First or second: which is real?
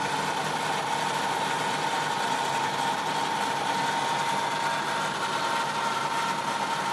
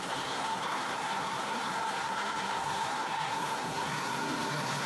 first